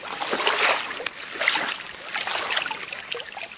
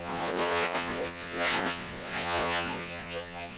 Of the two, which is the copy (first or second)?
second